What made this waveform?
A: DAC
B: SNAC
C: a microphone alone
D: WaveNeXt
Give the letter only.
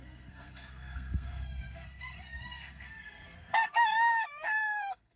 B